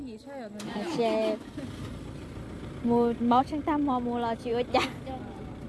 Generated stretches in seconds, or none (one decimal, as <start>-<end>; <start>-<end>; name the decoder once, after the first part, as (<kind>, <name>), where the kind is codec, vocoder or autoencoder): none

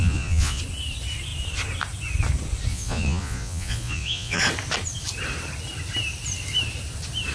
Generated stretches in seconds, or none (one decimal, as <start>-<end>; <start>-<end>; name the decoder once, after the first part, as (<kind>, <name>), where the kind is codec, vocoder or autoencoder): 0.0-0.6 (vocoder, Vocos); 2.7-4.4

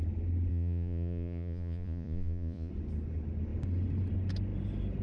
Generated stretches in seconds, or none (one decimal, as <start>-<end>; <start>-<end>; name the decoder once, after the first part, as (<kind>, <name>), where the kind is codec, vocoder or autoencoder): 0.5-2.7 (vocoder, Vocos)